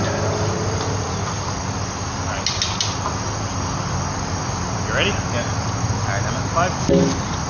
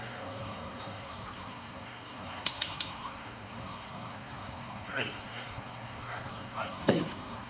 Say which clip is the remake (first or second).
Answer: second